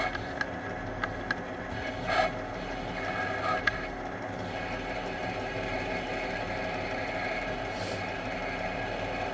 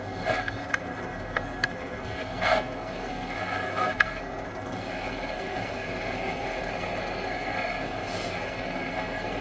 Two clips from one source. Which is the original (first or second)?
first